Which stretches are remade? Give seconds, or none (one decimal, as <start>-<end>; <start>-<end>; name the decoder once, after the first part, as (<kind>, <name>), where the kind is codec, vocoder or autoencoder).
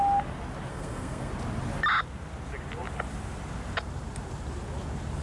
0.7-1.3 (codec, SNAC)